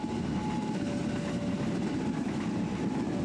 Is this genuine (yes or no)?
yes